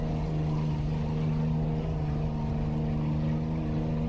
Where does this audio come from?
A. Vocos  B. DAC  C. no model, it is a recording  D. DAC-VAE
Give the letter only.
C